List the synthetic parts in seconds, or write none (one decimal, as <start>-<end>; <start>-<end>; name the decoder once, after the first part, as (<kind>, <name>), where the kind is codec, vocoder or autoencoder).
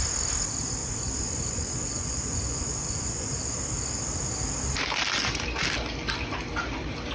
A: 0.8-3.4 (vocoder, Vocos)